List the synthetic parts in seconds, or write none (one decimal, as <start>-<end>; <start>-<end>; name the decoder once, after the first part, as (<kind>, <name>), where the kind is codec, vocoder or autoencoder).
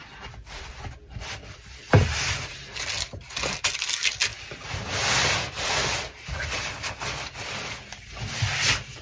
none